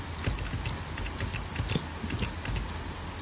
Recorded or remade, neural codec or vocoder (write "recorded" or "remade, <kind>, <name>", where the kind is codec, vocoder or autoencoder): recorded